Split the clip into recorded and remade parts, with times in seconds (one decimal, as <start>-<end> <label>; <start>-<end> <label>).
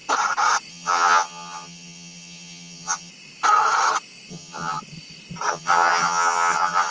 0.0-0.7 recorded; 0.7-3.1 remade; 3.1-4.3 recorded; 4.3-4.8 remade; 4.8-5.5 recorded; 5.5-6.9 remade